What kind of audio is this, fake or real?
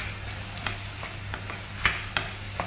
real